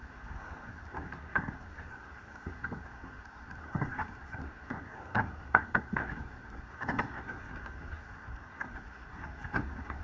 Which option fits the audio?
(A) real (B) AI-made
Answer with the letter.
B